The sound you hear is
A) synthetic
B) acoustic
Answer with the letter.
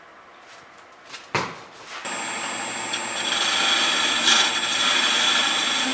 B